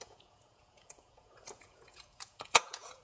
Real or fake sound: fake